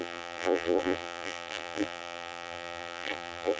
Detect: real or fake fake